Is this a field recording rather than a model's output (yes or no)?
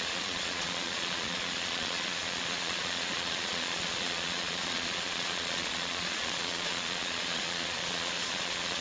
no